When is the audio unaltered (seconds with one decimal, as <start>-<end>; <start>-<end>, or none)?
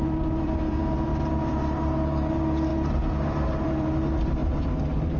none